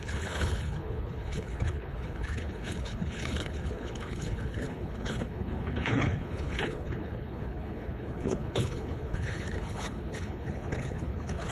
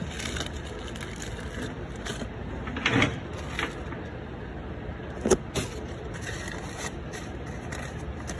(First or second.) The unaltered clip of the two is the second